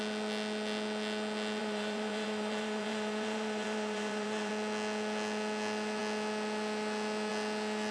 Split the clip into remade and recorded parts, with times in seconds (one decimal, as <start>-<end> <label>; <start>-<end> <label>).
0.0-1.6 recorded; 1.6-4.5 remade; 4.5-7.9 recorded